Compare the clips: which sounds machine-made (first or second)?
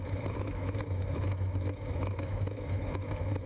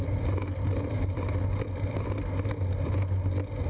first